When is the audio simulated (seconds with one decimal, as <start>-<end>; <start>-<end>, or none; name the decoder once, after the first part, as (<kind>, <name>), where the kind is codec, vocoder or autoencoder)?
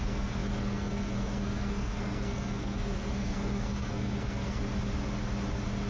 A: 0.0-4.6 (codec, SNAC)